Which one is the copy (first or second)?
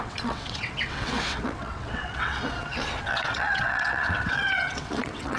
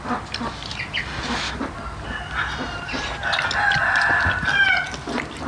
first